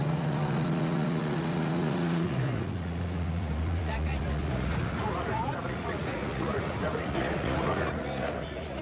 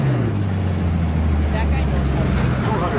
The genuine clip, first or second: second